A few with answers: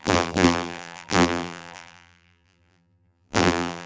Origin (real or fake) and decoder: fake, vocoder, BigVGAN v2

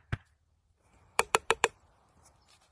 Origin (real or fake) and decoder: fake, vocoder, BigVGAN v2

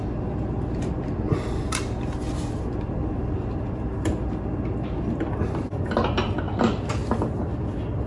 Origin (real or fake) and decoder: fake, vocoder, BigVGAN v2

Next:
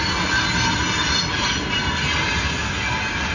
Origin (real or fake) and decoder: real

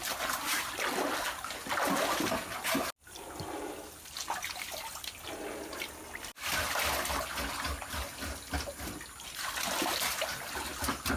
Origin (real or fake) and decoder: real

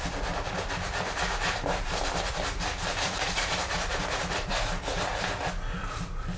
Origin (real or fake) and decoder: fake, vocoder, BigVGAN v2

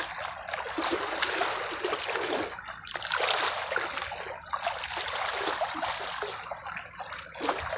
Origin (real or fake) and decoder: real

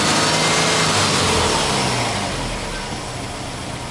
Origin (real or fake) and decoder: real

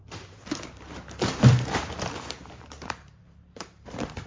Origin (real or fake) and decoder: fake, vocoder, BigVGAN v2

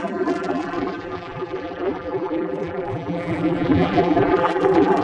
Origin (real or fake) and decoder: fake, vocoder, BigVGAN v2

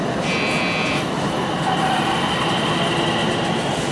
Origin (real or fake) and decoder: fake, vocoder, BigVGAN v2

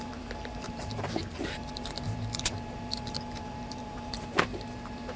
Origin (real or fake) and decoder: fake, vocoder, BigVGAN v2